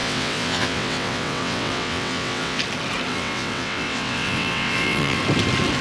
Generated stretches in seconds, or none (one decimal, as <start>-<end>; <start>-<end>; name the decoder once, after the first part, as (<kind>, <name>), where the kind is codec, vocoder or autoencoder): 0.0-2.6 (vocoder, WaveNeXt); 3.1-5.2